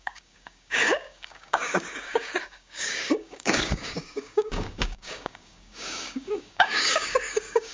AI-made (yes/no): yes